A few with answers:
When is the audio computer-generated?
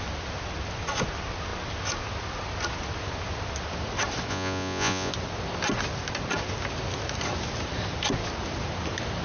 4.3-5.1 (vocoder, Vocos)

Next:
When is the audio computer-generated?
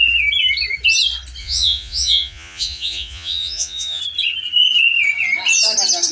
1.4-4.0 (vocoder, Vocos)